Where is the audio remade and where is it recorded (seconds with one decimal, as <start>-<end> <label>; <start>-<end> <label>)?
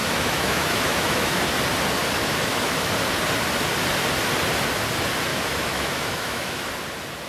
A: 0.0-1.4 remade; 1.4-2.2 recorded; 2.2-2.9 remade; 2.9-5.3 recorded; 5.3-6.7 remade; 6.7-7.3 recorded